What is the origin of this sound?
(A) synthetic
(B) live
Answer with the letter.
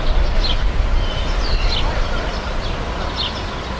B